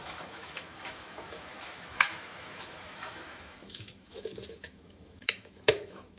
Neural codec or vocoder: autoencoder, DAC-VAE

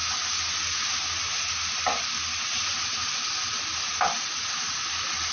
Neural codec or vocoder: none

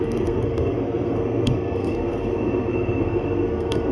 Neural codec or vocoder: codec, SNAC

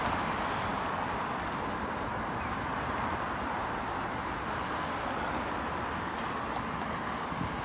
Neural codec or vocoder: none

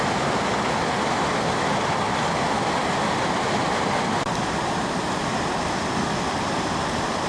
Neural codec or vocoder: none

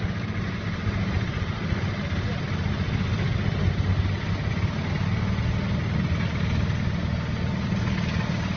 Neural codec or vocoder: none